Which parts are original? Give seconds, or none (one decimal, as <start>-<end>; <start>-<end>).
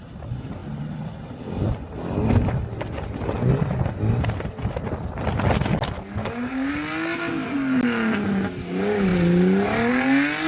0.0-6.2; 6.7-10.5